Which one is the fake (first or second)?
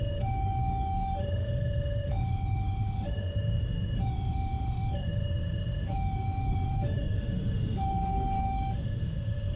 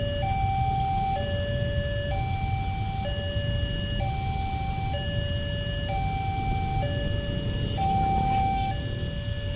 first